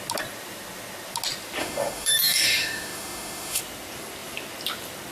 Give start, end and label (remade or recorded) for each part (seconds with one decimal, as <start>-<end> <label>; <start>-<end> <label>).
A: 0.0-1.6 recorded; 1.6-3.6 remade; 3.6-5.1 recorded